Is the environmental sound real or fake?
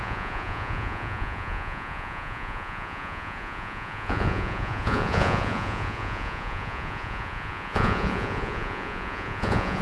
fake